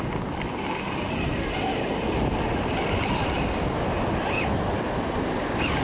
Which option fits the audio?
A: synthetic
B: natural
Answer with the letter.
B